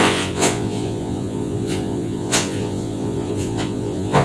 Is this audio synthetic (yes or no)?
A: yes